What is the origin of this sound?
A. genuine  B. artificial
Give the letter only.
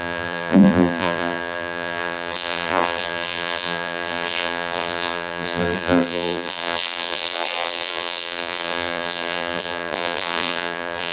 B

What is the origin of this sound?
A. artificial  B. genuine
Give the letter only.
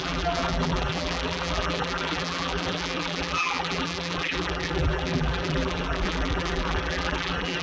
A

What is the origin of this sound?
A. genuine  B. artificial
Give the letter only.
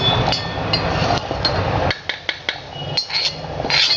A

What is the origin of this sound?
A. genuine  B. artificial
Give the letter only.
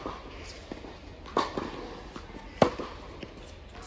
A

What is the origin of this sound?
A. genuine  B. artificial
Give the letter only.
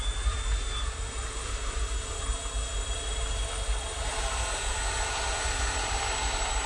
B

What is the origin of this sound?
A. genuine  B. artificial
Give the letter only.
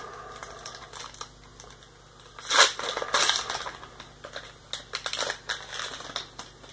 A